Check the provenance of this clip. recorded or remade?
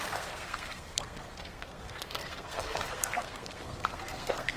remade